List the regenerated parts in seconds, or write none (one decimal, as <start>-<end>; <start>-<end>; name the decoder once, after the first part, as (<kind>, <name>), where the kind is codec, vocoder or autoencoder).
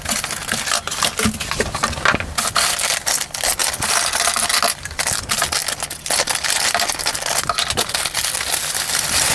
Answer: none